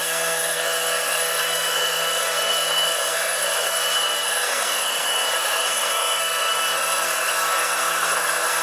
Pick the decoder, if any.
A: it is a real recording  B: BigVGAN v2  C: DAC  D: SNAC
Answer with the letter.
D